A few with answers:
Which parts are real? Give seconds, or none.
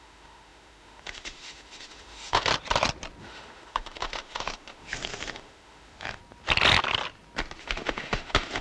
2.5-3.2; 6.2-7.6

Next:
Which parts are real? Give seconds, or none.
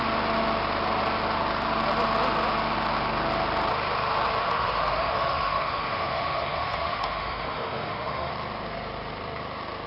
0.0-4.4; 8.3-9.9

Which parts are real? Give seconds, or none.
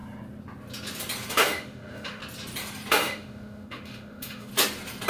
0.0-1.3; 2.2-2.9; 4.5-5.1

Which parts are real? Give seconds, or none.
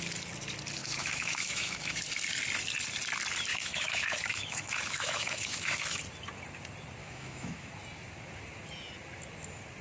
0.0-0.8; 2.0-3.5; 6.0-7.0; 7.7-9.8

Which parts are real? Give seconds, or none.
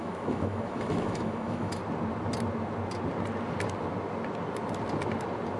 1.8-5.6